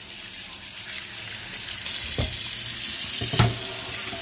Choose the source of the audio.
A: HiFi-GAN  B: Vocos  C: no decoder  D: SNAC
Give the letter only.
C